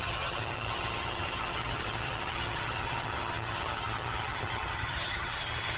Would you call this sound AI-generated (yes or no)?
yes